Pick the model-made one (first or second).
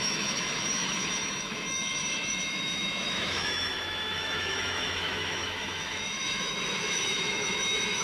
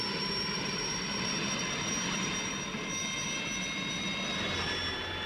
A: first